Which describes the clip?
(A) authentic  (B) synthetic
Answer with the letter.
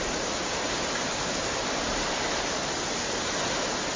A